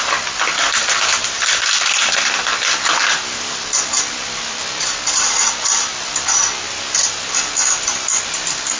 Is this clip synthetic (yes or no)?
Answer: yes